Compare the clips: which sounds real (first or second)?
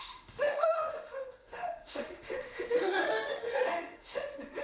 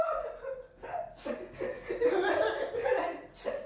second